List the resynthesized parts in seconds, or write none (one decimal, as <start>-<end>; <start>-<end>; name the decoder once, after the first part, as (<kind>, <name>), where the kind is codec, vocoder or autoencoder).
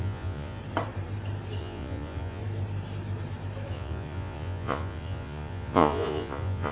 0.0-0.6 (vocoder, Vocos); 1.6-2.4; 3.7-6.7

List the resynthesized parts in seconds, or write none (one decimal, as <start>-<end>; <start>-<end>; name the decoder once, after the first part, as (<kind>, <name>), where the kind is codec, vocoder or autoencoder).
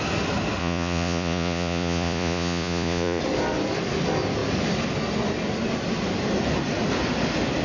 0.6-3.2 (vocoder, Vocos)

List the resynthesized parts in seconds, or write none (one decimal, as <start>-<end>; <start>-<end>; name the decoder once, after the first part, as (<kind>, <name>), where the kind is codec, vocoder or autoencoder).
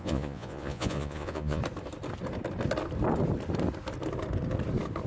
0.0-1.6 (vocoder, Vocos)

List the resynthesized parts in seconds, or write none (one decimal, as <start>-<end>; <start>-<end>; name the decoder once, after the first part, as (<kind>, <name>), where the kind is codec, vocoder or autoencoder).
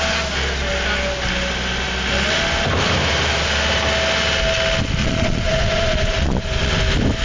5.0-6.8 (vocoder, Vocos)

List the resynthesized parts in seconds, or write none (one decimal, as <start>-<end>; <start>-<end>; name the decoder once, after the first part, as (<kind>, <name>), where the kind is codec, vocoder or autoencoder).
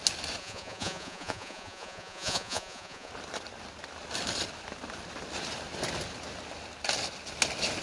0.4-3.1 (vocoder, Vocos)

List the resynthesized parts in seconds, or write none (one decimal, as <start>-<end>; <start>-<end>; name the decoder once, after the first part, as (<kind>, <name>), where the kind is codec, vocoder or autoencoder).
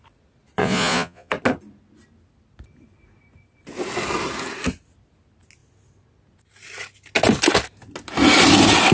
0.6-1.3 (vocoder, Vocos)